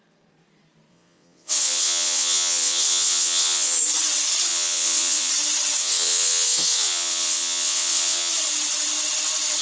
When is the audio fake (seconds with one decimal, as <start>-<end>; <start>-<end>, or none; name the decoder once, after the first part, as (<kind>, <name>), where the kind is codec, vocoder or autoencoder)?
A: 0.9-3.8 (vocoder, WaveNeXt); 4.5-5.3; 5.8-8.3